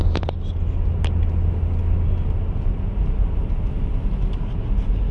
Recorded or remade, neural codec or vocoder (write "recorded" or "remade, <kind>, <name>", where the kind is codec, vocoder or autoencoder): recorded